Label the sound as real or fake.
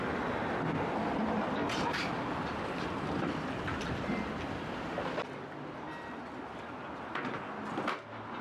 real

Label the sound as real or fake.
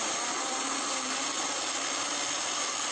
fake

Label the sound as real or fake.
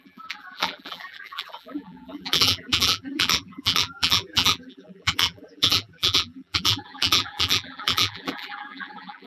fake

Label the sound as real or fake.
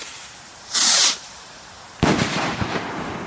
fake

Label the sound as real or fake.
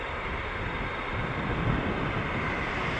real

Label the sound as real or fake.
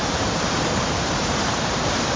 fake